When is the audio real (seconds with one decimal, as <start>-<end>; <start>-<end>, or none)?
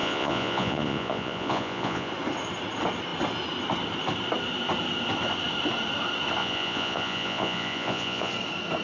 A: 2.1-6.4; 8.3-8.8